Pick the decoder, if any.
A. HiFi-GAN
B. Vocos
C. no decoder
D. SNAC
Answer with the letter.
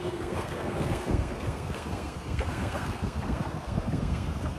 D